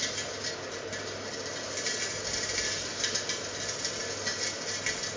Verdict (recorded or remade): recorded